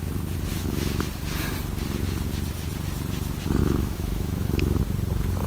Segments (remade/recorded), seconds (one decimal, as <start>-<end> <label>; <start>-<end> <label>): 0.0-0.5 recorded; 0.5-1.2 remade; 1.2-3.6 recorded; 3.6-4.8 remade; 4.8-5.5 recorded